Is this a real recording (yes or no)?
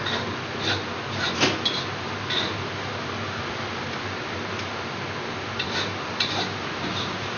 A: yes